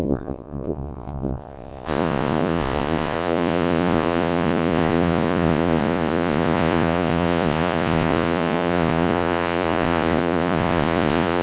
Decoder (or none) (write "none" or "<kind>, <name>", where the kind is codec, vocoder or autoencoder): vocoder, Vocos